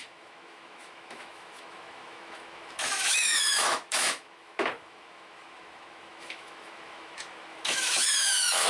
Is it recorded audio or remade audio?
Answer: remade